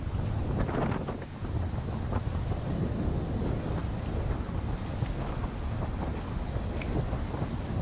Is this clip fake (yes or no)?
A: no